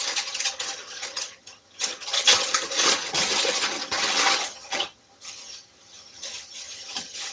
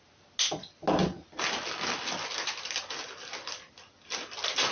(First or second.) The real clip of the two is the second